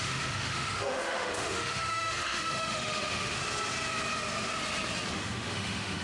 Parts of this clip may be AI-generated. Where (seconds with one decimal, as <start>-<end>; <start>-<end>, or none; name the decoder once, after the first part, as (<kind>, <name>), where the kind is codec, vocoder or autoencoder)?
0.0-3.4 (autoencoder, DAC-VAE); 5.1-6.0